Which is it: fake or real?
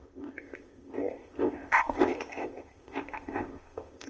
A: fake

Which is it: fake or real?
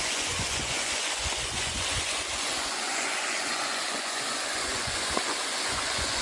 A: fake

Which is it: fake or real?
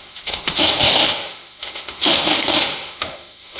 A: fake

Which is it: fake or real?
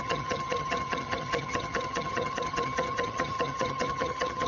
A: fake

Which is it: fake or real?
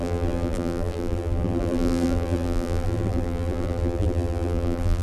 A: fake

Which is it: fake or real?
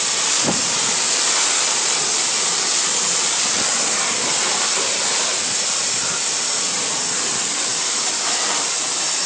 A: real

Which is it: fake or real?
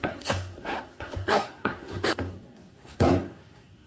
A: fake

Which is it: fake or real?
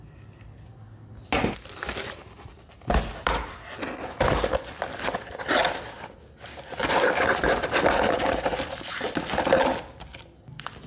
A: real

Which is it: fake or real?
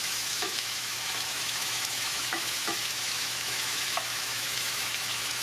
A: fake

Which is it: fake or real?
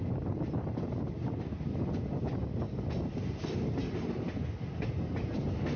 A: real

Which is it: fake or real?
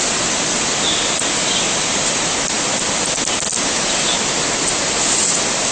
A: real